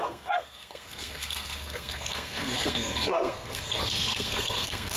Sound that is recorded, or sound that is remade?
remade